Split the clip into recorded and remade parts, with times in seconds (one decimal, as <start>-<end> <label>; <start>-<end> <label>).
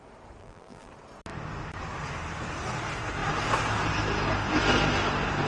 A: 0.0-0.4 recorded; 0.4-0.9 remade; 0.9-5.5 recorded